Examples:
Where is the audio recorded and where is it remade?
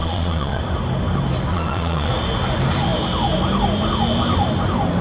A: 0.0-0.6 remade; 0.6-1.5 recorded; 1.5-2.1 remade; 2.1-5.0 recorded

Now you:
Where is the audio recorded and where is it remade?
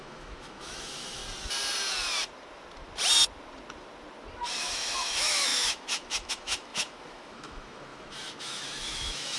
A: 0.0-1.2 remade; 1.2-4.6 recorded; 4.6-9.4 remade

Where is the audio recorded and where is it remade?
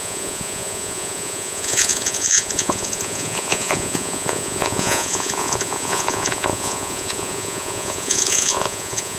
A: 0.0-9.2 remade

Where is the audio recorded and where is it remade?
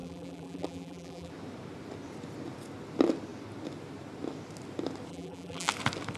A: 0.0-1.3 remade; 1.3-5.1 recorded; 5.1-5.7 remade; 5.7-6.2 recorded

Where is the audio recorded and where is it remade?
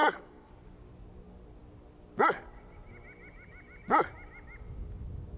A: 0.0-0.5 remade; 0.5-5.4 recorded